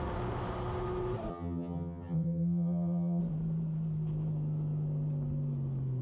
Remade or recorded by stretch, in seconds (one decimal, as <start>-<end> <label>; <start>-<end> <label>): 0.0-1.3 recorded; 1.3-3.2 remade; 3.2-6.0 recorded